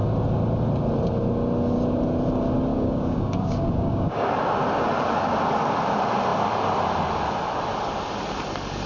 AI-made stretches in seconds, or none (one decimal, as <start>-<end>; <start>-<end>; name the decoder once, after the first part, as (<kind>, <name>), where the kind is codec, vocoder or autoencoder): 2.7-4.3 (codec, DAC)